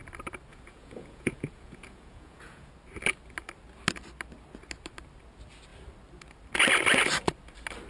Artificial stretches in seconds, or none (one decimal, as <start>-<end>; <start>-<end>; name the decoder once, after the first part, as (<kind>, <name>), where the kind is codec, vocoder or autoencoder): 0.5-2.7 (vocoder, Vocos)